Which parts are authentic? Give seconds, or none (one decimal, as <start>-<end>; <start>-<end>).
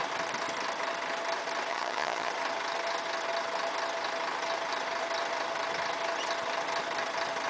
0.0-1.7; 2.3-7.5